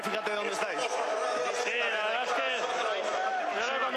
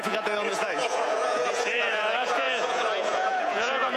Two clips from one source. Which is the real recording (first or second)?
first